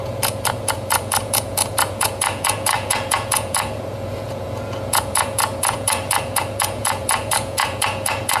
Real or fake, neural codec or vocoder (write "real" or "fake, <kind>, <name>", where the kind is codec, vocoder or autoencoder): fake, vocoder, Vocos